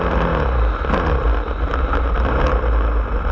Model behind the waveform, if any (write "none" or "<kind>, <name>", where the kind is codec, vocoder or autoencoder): none